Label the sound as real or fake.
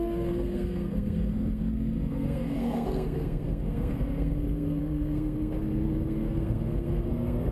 fake